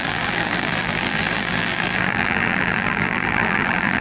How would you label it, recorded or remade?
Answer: remade